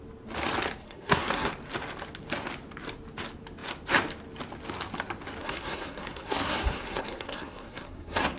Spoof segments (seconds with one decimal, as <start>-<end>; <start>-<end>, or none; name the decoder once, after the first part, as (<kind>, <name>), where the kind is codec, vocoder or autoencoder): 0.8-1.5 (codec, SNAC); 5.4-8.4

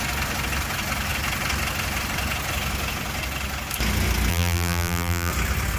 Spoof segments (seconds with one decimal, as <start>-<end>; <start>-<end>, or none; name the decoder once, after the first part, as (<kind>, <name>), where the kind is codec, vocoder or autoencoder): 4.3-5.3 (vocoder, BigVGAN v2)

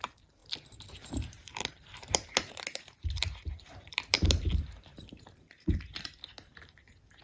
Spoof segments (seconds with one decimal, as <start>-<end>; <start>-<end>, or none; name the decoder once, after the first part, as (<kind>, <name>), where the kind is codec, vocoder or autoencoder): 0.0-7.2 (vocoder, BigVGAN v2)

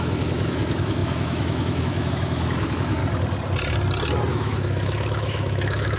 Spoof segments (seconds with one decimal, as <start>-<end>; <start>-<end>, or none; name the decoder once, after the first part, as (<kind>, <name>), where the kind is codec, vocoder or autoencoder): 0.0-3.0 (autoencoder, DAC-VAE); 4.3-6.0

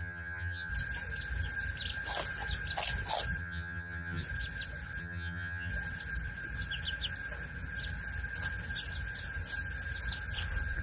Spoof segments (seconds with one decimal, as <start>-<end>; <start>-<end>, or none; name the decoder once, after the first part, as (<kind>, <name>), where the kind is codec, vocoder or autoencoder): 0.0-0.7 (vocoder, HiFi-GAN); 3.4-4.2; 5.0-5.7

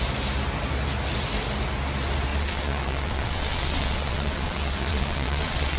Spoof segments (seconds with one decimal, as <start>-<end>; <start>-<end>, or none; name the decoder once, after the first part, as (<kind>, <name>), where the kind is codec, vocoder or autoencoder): 2.3-5.8 (vocoder, WaveNeXt)

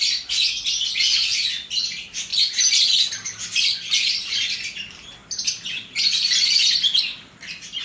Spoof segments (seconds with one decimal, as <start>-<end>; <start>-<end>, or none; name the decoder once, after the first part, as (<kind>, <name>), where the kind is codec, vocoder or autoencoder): none